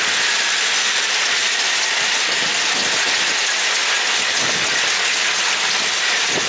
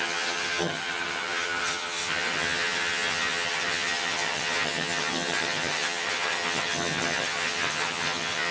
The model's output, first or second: second